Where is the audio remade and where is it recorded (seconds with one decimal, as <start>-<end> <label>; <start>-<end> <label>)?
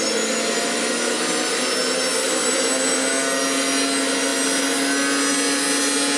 0.0-2.1 recorded; 2.1-2.7 remade; 2.7-6.2 recorded